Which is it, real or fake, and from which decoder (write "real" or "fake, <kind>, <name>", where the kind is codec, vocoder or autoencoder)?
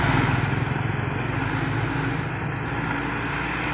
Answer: real